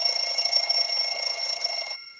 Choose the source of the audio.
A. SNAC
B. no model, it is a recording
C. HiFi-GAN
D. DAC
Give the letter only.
C